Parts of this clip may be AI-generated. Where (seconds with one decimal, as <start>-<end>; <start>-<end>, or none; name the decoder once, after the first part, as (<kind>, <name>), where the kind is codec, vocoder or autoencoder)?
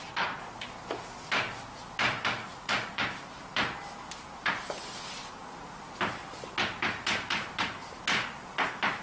2.4-3.0 (vocoder, Vocos)